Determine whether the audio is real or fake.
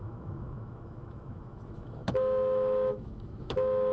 fake